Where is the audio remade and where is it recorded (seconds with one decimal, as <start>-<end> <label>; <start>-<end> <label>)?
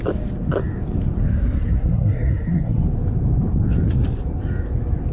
0.0-1.2 recorded; 1.2-2.8 remade; 2.8-5.1 recorded